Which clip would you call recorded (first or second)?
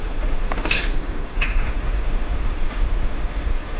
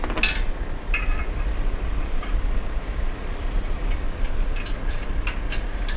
second